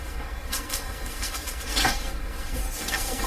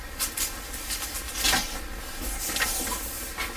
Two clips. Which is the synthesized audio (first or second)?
first